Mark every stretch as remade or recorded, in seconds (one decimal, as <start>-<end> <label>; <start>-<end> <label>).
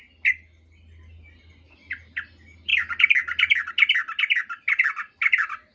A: 0.0-5.7 recorded